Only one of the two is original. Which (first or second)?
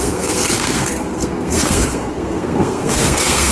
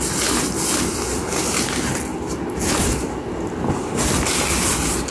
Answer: second